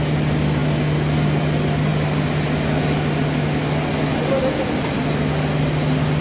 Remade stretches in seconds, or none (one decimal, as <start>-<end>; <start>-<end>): none